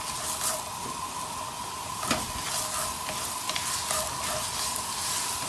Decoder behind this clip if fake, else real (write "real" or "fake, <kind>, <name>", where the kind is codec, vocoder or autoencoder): real